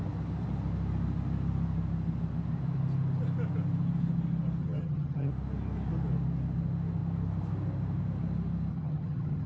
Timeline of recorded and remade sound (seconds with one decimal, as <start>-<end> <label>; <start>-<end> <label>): 0.0-4.6 recorded; 4.6-5.3 remade; 5.3-8.7 recorded; 8.7-9.5 remade